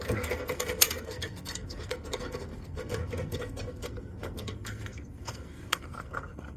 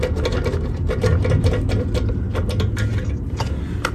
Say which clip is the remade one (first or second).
first